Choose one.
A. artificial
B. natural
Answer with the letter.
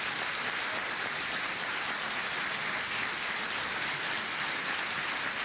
B